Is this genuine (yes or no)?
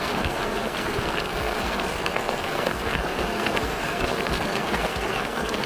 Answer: no